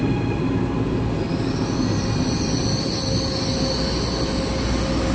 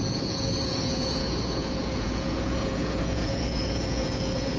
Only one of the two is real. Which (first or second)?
first